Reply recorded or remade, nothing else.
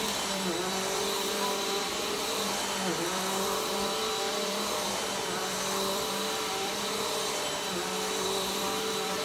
remade